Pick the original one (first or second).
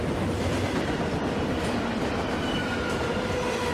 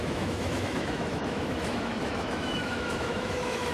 first